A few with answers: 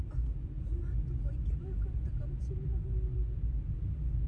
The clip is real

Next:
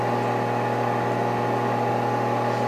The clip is real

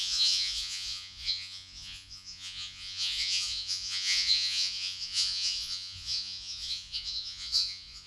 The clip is fake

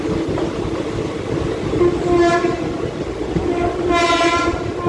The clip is real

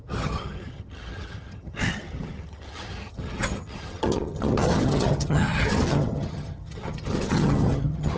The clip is fake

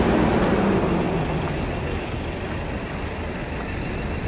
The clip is real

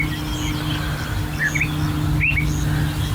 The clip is real